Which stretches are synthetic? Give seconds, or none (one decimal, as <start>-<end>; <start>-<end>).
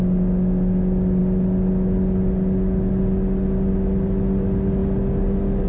none